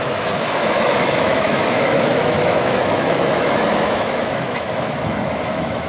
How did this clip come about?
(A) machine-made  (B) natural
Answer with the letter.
A